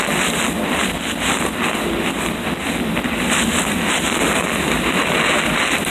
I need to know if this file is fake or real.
real